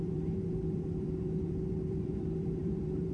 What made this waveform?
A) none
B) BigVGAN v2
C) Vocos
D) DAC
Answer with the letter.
B